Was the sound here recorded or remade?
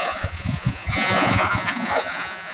remade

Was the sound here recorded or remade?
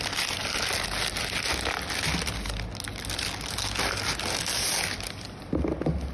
recorded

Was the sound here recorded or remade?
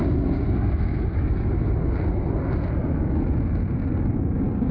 recorded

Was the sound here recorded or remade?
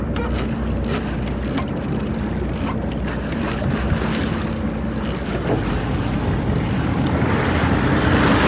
recorded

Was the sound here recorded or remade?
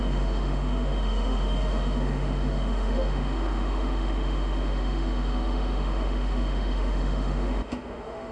remade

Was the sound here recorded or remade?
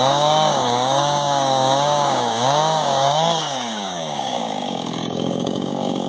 remade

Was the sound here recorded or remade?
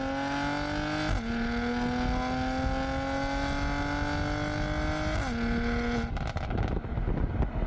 recorded